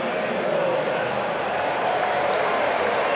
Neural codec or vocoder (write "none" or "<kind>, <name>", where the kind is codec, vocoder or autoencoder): none